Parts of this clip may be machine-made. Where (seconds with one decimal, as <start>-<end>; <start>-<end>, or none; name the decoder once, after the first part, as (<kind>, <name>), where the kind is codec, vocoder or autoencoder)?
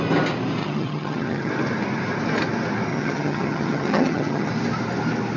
0.6-1.5 (vocoder, HiFi-GAN); 2.9-4.5